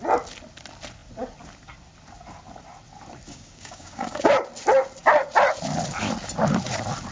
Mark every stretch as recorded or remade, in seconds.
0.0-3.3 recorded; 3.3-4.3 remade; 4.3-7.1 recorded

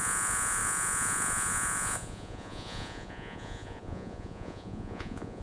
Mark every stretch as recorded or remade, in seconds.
0.0-5.4 remade

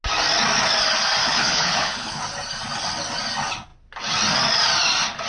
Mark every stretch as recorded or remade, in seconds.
0.0-1.2 recorded; 1.2-2.2 remade; 2.2-5.3 recorded